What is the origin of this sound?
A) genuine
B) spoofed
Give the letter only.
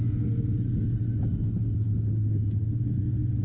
A